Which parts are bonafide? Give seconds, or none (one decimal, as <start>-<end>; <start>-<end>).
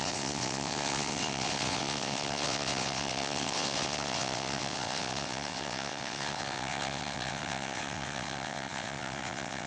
none